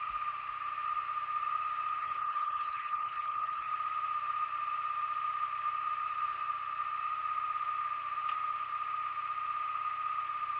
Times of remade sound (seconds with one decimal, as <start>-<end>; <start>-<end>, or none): 2.0-3.7